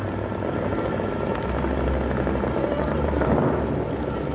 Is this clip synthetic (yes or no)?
no